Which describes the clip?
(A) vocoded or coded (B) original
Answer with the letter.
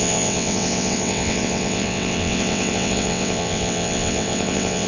A